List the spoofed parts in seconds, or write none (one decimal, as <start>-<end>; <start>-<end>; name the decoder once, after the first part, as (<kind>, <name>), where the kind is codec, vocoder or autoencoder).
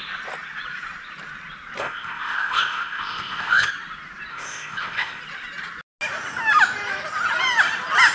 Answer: 1.8-3.7 (codec, ZipCodec); 4.3-5.2